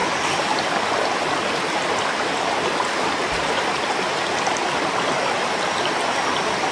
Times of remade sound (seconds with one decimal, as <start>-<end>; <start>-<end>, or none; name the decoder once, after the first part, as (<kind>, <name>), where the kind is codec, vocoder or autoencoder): none